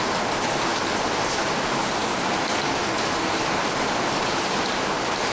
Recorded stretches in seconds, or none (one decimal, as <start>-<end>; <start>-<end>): 0.0-5.3